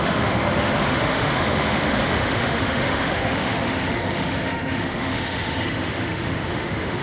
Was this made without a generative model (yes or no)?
no